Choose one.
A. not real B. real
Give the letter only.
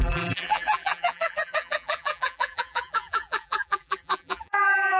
A